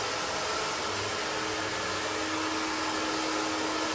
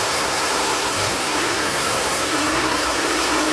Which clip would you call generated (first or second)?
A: second